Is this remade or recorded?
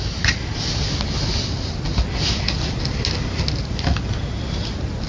recorded